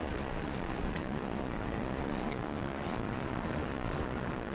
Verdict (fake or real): fake